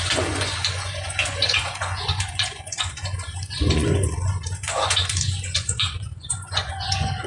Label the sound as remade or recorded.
remade